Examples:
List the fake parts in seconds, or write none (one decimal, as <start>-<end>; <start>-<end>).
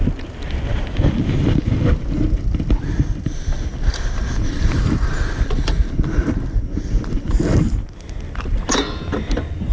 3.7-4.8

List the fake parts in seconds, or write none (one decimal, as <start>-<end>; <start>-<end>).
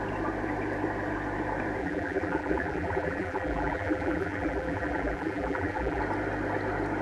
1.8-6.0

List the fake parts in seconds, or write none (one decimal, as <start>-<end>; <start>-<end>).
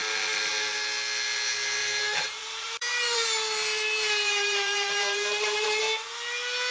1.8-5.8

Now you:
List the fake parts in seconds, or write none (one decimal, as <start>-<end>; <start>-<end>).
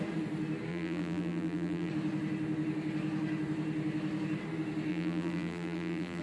0.7-1.9; 4.9-6.2